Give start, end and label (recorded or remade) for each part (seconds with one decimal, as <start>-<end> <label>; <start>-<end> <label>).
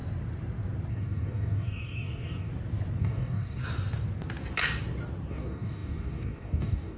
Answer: 0.0-0.9 recorded; 0.9-2.5 remade; 2.5-3.0 recorded; 3.0-3.6 remade; 3.6-5.3 recorded; 5.3-7.0 remade